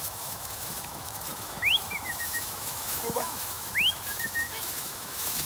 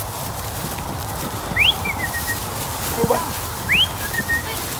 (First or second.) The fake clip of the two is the first